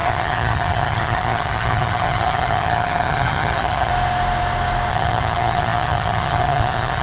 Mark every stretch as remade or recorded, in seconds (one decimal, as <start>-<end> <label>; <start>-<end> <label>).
0.0-3.9 remade; 3.9-4.9 recorded; 4.9-7.0 remade